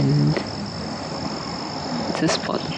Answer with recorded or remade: recorded